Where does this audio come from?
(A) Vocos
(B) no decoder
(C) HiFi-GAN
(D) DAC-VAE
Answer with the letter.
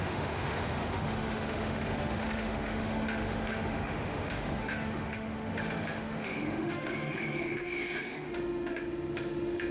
D